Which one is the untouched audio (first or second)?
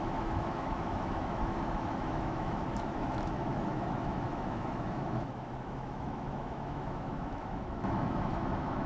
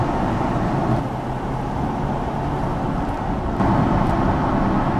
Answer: second